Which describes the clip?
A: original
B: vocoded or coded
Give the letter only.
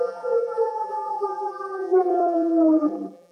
B